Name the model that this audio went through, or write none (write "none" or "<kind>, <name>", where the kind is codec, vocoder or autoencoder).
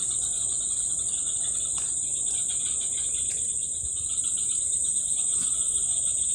none